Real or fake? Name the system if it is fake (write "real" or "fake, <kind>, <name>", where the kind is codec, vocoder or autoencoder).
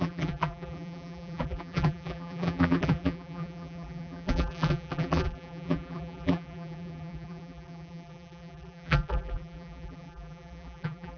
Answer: fake, vocoder, BigVGAN v2